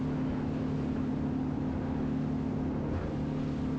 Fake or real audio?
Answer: real